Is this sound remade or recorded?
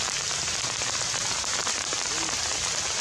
recorded